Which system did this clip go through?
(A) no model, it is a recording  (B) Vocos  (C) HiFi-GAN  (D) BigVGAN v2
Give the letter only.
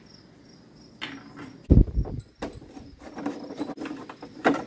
A